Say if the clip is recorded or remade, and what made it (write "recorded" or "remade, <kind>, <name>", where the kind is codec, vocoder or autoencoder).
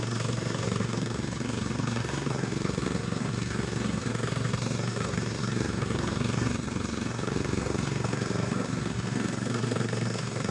remade, codec, SNAC